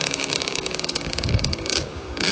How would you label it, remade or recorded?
remade